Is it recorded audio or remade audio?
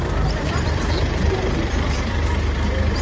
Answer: remade